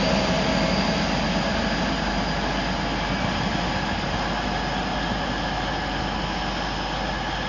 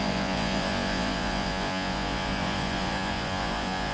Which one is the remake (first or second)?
second